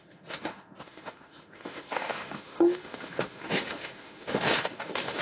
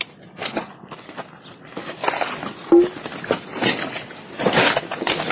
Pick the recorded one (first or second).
second